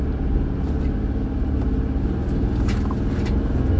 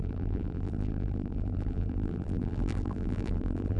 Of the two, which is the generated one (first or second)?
second